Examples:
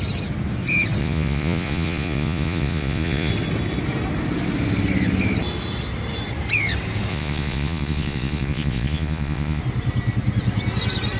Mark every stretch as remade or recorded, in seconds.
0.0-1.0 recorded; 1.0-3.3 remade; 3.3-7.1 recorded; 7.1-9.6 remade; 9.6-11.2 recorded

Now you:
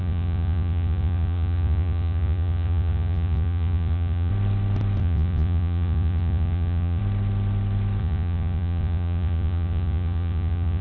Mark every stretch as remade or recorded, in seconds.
0.0-4.3 remade; 4.3-5.0 recorded; 5.0-7.0 remade; 7.0-8.0 recorded; 8.0-10.8 remade